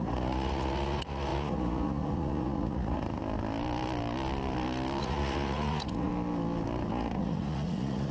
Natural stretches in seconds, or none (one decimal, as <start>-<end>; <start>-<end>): 3.2-5.0; 6.1-6.9